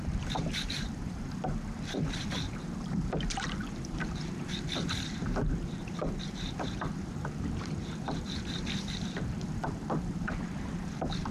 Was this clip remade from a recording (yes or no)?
yes